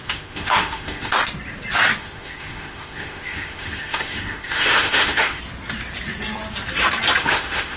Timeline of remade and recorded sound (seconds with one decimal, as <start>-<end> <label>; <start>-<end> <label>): 0.0-1.1 remade; 1.1-2.0 recorded; 2.0-5.4 remade; 5.4-7.2 recorded; 7.2-7.8 remade